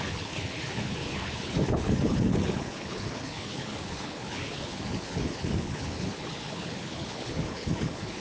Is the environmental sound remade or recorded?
remade